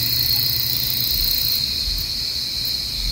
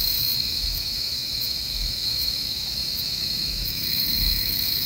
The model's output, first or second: second